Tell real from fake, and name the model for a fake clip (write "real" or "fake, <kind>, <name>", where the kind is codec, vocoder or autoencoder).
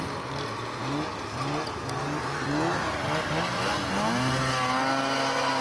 real